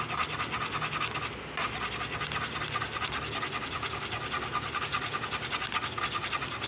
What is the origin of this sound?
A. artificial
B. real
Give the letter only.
B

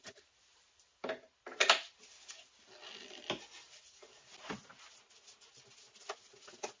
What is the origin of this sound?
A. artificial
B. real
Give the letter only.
B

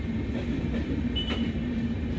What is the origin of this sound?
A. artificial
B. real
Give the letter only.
B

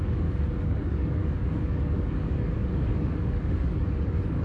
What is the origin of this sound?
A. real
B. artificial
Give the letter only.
B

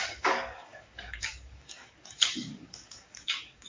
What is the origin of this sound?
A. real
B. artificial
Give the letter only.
B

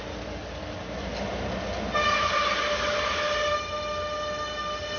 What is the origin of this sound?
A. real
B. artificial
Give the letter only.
A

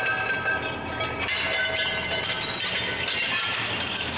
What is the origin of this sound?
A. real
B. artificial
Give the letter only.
A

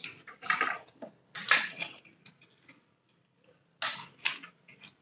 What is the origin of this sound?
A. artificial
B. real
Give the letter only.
B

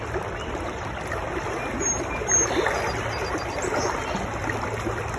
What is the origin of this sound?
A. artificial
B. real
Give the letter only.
B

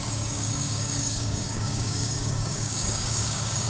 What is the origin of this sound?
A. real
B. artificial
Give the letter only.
B